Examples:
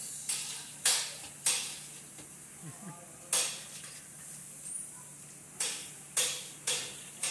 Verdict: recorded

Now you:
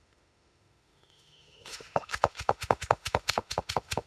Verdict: remade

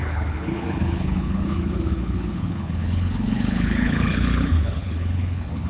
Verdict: remade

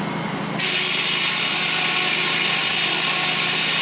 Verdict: recorded